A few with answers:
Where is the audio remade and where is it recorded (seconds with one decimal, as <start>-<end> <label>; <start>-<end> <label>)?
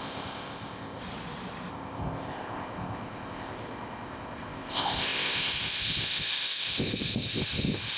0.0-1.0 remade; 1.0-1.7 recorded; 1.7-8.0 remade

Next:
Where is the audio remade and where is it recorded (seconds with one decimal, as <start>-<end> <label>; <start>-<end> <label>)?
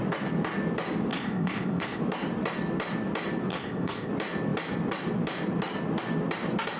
0.0-1.1 recorded; 1.1-2.0 remade; 2.0-3.5 recorded; 3.5-4.1 remade; 4.1-6.8 recorded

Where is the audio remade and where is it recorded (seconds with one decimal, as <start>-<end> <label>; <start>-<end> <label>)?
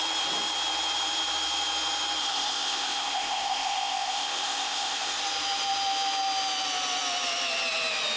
0.0-2.2 recorded; 2.2-5.2 remade; 5.2-8.2 recorded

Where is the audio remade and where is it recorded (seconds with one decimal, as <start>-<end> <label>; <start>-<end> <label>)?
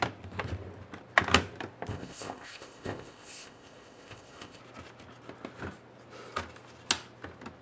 0.0-1.9 recorded; 1.9-4.6 remade; 4.6-7.6 recorded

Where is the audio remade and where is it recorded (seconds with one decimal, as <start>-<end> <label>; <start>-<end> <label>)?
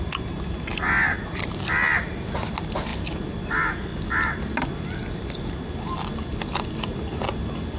0.0-7.8 recorded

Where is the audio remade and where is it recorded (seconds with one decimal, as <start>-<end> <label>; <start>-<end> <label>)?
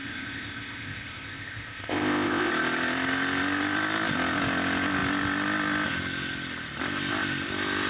0.0-2.5 remade; 2.5-7.9 recorded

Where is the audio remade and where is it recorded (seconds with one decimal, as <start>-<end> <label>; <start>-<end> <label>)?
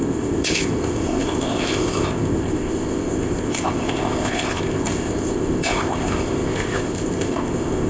0.0-7.9 remade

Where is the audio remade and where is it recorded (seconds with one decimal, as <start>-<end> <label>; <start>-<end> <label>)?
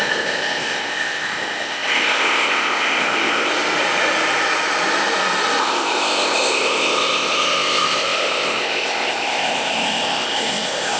0.0-3.5 remade; 3.5-5.6 recorded; 5.6-11.0 remade